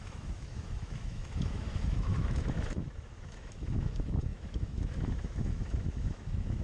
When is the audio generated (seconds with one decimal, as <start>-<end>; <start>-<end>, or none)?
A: 0.0-6.6